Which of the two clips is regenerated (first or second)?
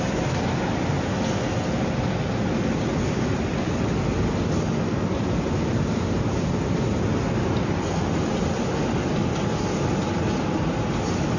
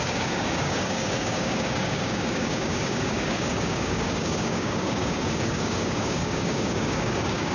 second